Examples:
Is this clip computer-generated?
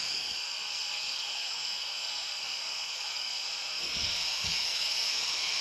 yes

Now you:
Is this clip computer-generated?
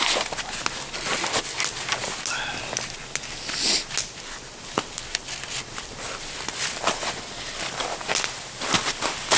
no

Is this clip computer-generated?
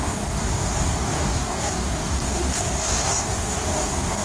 yes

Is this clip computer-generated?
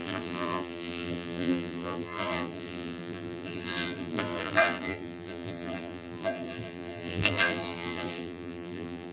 yes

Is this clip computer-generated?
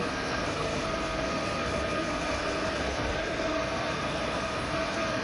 yes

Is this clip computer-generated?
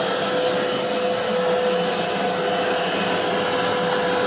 no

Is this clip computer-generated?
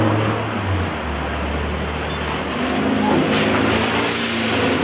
no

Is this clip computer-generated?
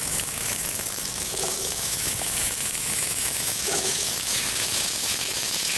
yes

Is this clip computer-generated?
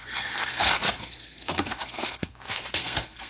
yes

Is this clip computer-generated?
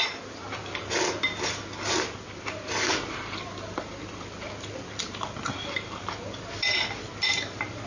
no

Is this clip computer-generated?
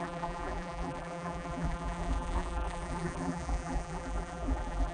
yes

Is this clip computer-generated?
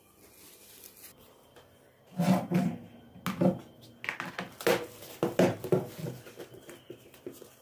no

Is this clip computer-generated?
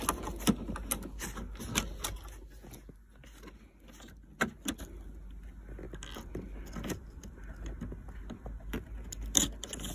no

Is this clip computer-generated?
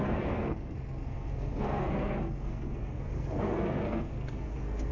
yes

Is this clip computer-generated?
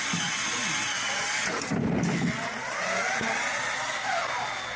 no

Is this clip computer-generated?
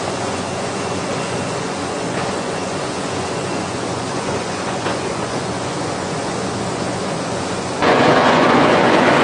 yes